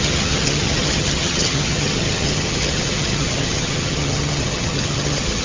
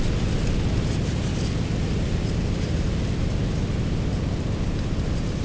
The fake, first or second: first